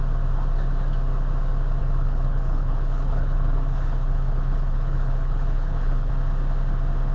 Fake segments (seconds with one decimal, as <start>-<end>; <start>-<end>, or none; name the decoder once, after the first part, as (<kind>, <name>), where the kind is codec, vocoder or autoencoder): 1.8-6.1 (codec, HILCodec)